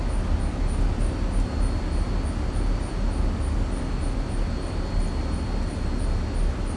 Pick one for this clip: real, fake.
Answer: real